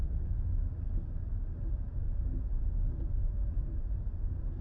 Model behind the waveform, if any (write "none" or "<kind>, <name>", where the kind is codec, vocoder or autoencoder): none